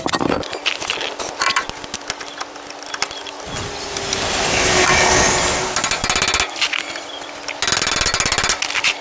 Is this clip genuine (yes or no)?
yes